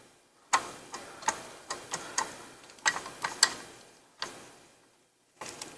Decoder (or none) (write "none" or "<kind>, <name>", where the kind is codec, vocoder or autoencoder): none